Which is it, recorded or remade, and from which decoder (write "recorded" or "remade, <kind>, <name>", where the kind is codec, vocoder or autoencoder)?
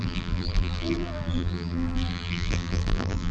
remade, vocoder, BigVGAN v2